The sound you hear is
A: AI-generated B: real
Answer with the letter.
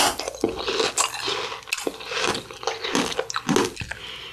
B